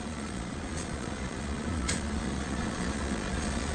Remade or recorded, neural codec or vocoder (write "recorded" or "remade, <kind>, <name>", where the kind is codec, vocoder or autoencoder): remade, vocoder, Vocos